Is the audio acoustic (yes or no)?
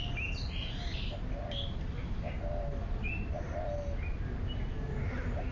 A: yes